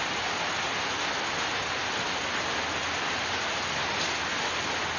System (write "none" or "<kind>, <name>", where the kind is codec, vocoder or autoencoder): none